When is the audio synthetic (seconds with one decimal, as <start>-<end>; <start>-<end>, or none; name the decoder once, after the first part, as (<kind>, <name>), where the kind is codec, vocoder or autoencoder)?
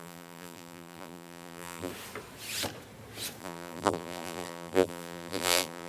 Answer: 0.0-1.9 (vocoder, BigVGAN v2); 3.4-5.9